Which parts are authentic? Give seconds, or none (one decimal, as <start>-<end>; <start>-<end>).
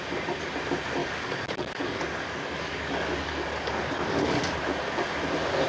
0.0-1.0; 4.4-5.7